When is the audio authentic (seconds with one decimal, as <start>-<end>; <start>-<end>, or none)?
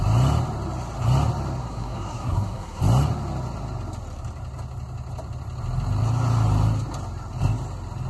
0.0-1.6; 2.8-8.1